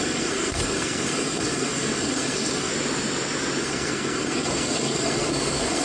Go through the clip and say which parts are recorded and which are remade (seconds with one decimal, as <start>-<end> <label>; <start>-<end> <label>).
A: 0.0-2.7 remade; 2.7-3.6 recorded; 3.6-5.8 remade